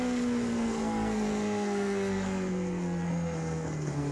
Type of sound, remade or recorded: remade